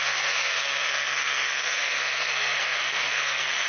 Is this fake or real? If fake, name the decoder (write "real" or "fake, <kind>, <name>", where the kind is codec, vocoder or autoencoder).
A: fake, codec, SNAC